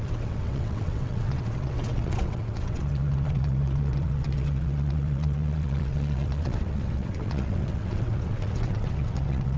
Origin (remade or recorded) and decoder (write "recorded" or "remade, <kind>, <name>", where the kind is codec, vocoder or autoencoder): remade, vocoder, WaveNeXt